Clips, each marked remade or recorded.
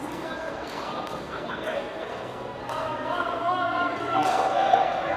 remade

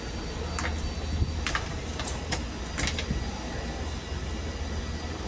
recorded